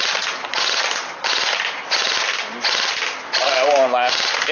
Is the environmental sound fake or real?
real